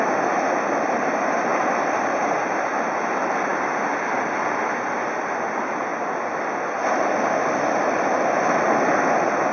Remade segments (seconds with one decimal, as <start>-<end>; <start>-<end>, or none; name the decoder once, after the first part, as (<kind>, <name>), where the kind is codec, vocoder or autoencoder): 1.5-2.0 (vocoder, BigVGAN v2)